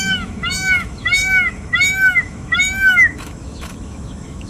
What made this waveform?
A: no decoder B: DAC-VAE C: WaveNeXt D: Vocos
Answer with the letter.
B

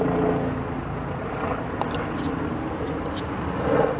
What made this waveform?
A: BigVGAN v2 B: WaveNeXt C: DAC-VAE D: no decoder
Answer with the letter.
D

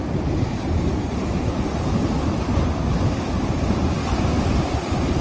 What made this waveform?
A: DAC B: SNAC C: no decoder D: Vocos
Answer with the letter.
C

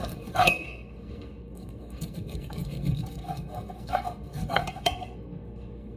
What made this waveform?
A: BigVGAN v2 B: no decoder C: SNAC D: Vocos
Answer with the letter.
C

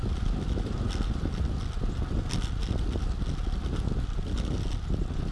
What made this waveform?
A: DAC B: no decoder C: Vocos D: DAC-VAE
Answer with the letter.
B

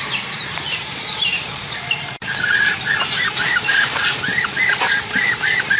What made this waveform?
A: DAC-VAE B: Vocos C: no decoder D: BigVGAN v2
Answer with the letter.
D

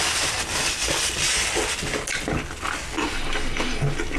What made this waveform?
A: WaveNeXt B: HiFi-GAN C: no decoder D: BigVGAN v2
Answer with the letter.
C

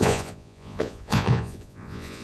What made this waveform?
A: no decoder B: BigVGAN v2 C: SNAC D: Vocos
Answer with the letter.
D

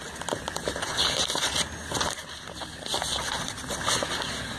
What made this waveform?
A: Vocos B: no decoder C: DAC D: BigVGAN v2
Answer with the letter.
B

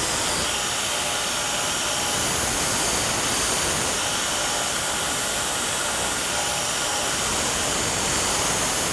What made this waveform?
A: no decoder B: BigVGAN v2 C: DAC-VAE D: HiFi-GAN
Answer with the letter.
A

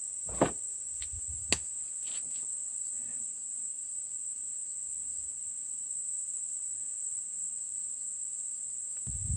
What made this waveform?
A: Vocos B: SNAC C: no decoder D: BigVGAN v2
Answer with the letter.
C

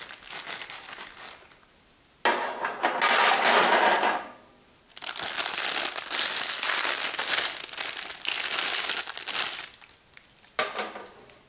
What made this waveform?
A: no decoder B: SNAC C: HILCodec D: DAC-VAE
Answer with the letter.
A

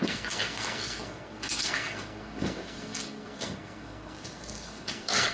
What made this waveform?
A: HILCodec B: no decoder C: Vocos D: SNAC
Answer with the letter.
D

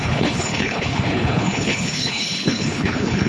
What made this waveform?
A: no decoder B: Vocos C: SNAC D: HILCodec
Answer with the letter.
D